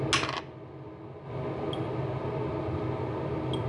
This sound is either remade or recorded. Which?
recorded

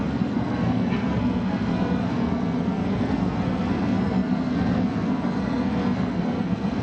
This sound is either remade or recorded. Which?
remade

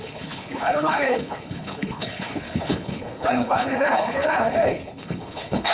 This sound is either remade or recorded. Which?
remade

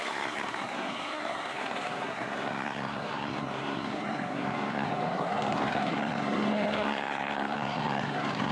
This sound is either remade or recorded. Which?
remade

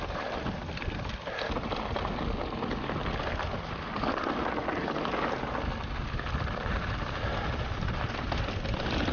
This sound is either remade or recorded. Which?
recorded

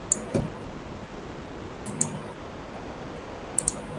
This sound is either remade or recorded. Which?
recorded